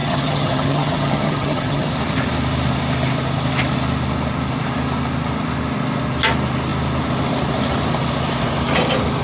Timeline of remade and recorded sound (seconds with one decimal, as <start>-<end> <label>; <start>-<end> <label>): 0.0-1.9 remade; 1.9-9.2 recorded